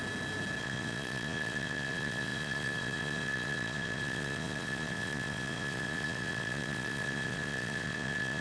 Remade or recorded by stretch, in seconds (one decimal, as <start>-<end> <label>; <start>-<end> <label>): 0.0-0.6 recorded; 0.6-8.4 remade